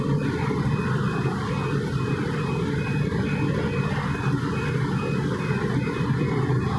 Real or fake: real